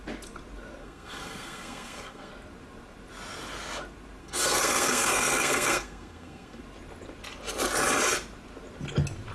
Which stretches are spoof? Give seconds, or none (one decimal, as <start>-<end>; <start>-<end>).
0.8-2.3; 4.2-6.6